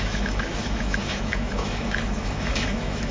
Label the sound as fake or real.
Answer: fake